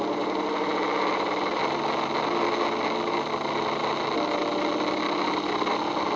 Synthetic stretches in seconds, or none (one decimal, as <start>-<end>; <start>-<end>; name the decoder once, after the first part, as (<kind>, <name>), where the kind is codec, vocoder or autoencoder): none